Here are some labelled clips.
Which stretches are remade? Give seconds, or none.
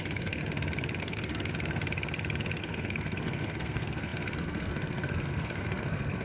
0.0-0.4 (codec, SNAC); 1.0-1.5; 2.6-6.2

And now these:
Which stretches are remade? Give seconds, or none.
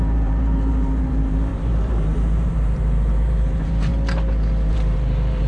0.0-3.9 (vocoder, BigVGAN v2); 4.7-5.5